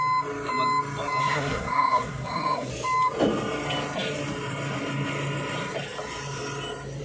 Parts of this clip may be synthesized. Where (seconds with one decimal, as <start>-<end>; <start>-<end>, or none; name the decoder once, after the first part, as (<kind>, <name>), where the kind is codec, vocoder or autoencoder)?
1.2-2.7 (codec, SNAC)